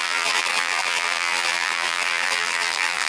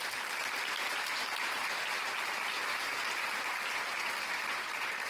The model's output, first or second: first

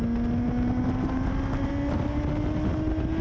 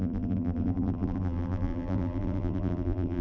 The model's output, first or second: second